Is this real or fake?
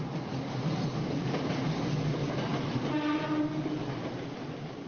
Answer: real